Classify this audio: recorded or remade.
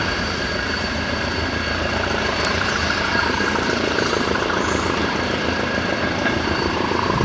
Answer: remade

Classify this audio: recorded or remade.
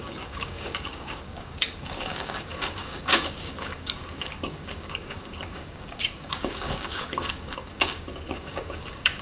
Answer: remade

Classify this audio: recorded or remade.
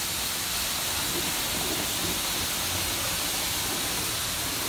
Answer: recorded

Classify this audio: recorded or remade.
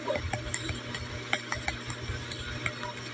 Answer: recorded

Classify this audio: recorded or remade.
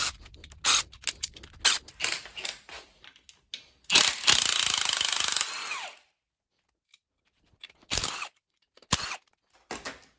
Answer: recorded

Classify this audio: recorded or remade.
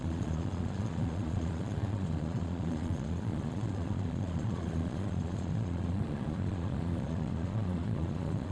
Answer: remade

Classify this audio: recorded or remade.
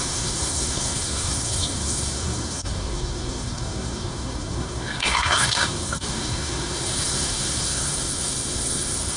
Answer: remade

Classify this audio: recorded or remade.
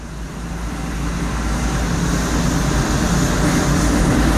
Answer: recorded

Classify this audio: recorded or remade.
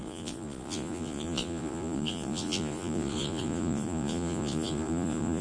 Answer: remade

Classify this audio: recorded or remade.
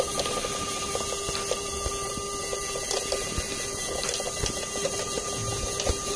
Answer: recorded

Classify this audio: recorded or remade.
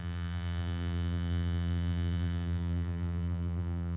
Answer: remade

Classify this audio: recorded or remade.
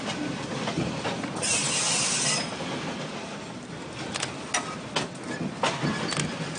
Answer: recorded